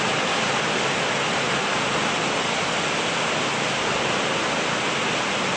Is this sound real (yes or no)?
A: yes